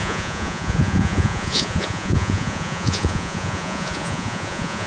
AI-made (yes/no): yes